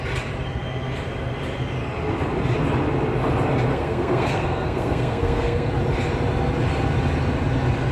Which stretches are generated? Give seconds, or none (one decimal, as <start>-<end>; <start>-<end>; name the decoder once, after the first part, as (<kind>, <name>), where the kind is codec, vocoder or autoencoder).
3.7-5.7 (codec, SNAC)